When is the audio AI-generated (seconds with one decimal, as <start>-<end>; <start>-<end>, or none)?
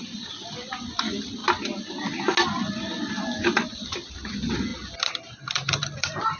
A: 0.0-1.4; 3.1-6.4